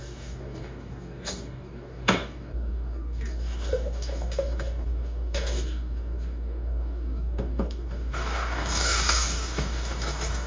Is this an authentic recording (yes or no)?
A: no